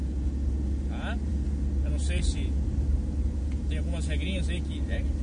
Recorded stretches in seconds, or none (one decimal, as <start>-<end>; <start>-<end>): 0.0-5.2